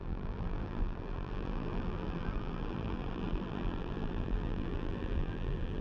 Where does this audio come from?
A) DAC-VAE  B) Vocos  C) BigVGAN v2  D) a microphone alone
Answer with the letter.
C